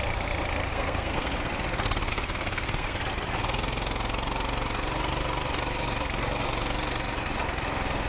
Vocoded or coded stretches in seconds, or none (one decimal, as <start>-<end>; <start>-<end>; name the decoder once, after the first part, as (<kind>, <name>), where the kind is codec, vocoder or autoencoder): 0.7-1.4 (codec, SNAC); 2.1-3.0